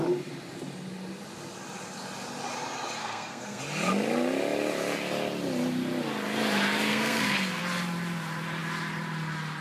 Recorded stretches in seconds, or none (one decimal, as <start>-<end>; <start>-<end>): 0.0-3.0; 3.6-6.9; 7.6-9.6